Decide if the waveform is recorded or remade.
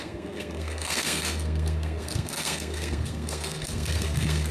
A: remade